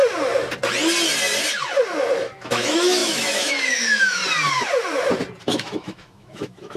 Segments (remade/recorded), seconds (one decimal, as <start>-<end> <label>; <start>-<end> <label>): 0.0-2.1 recorded; 2.1-4.2 remade; 4.2-5.4 recorded; 5.4-6.8 remade